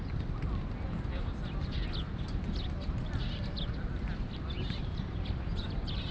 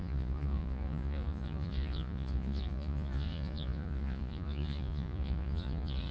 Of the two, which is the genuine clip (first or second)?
first